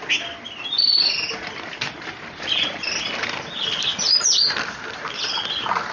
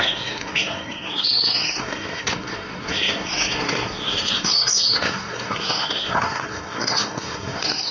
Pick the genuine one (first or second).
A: first